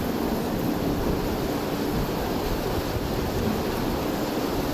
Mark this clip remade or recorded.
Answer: recorded